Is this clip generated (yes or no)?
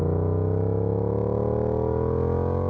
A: no